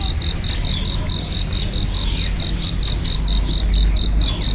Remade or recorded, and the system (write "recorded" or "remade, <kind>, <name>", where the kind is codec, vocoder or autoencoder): recorded